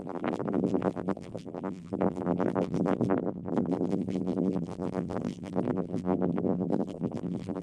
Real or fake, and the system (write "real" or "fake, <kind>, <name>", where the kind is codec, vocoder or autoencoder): fake, vocoder, BigVGAN v2